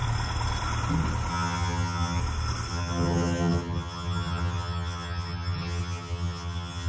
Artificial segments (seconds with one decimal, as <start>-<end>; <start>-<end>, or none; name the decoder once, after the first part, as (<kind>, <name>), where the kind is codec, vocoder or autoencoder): 1.3-2.2 (vocoder, HiFi-GAN); 2.7-6.9